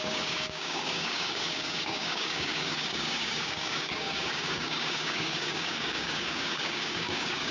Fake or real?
fake